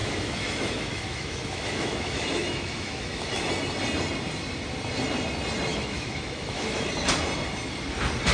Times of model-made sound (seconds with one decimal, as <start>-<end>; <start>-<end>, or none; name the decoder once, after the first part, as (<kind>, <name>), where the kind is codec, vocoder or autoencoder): 0.0-3.5 (autoencoder, DAC-VAE); 5.7-6.9